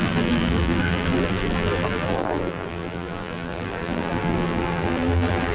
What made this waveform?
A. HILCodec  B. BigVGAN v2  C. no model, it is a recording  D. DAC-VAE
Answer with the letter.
B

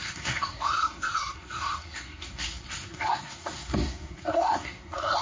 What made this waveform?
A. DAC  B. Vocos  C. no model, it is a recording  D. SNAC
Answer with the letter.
D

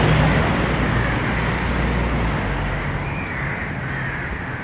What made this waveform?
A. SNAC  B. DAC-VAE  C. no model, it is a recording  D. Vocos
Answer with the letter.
C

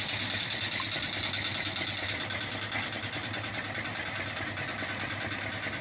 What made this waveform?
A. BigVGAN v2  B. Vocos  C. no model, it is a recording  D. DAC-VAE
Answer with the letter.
C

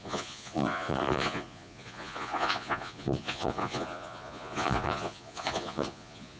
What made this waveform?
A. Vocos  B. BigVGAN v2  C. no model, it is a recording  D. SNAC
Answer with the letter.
A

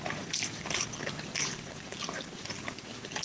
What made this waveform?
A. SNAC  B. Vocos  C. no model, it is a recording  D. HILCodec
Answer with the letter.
C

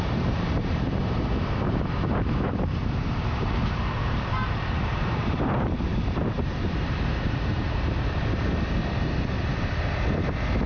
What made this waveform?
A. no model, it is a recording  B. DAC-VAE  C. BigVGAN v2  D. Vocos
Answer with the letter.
C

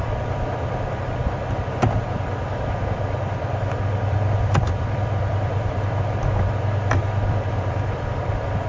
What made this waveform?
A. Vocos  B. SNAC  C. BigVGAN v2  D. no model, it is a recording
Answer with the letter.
C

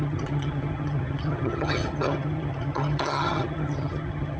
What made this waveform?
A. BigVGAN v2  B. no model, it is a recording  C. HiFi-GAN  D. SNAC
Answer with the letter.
C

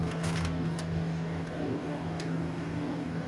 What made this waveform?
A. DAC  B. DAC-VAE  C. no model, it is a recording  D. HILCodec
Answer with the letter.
A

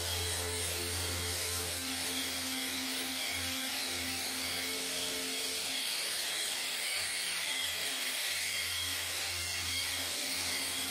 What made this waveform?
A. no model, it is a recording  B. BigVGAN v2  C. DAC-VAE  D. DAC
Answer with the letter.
D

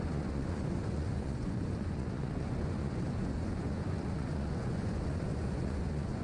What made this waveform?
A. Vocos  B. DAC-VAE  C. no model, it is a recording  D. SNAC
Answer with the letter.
A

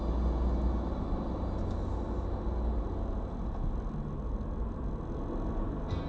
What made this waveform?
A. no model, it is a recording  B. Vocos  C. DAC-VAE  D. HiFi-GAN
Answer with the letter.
A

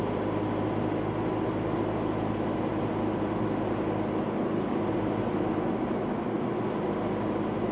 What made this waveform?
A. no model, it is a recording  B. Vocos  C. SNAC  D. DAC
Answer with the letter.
A